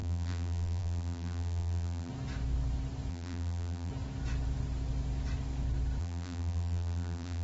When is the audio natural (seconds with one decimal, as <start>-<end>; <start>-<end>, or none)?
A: 2.1-3.1; 3.9-6.0